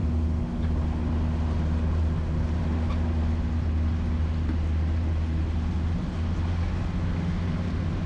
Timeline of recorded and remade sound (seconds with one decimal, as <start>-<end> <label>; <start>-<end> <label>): 0.0-8.1 recorded